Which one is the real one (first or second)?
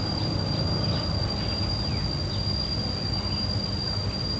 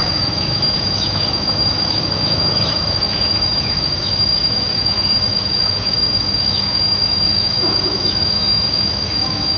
first